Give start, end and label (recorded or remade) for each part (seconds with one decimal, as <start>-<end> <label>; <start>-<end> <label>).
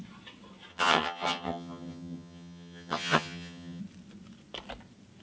0.0-0.7 recorded; 0.7-3.8 remade; 3.8-5.2 recorded